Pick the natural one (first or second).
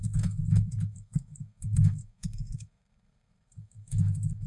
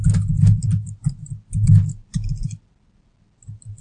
second